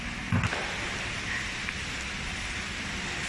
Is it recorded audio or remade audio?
recorded